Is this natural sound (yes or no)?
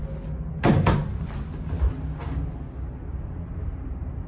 yes